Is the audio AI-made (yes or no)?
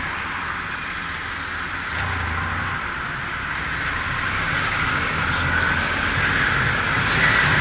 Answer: no